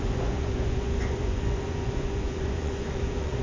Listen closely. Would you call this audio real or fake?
fake